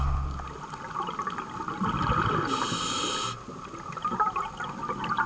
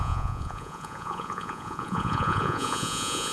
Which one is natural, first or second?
first